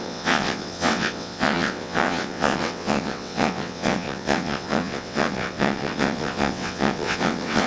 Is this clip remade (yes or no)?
yes